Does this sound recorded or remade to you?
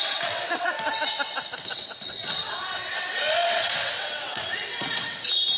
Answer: remade